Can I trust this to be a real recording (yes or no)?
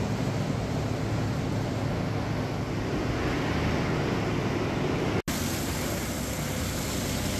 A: yes